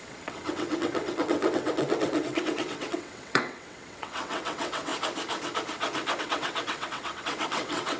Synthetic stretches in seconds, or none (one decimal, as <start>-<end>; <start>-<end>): 0.0-4.9; 6.2-8.0